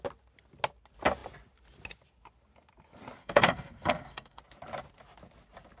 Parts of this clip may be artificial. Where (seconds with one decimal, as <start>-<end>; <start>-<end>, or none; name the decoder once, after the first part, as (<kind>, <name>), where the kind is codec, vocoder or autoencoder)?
3.2-4.4 (codec, SNAC)